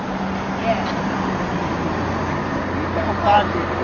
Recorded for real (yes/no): yes